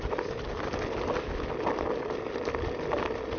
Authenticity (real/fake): real